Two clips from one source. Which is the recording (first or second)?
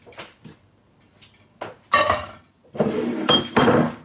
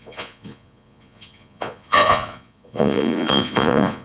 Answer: first